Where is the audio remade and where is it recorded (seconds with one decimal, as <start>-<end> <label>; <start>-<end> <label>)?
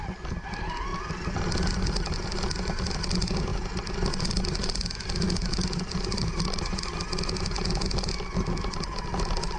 0.0-9.6 recorded